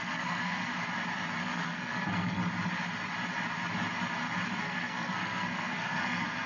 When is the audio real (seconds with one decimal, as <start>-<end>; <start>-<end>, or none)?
0.7-1.4; 2.4-4.6